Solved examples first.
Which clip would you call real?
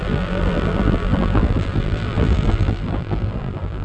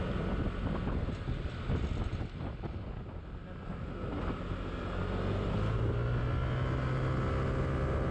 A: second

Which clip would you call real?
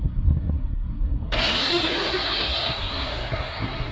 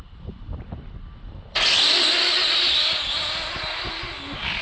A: second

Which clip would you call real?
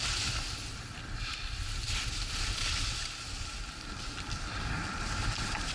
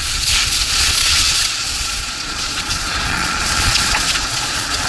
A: first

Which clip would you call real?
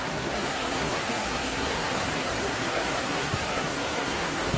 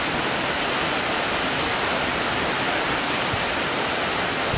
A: second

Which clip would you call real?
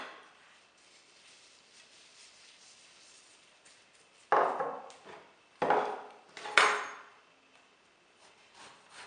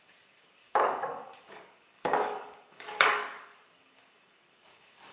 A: first